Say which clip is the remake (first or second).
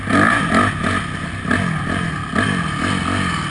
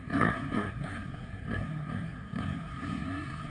second